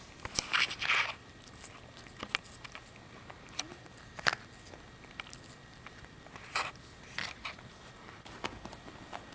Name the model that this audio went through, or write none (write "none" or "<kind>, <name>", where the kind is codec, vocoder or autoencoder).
none